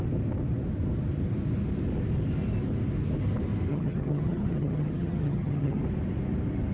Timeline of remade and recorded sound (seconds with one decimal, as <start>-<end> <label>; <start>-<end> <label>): 0.0-3.7 recorded; 3.7-5.8 remade; 5.8-6.7 recorded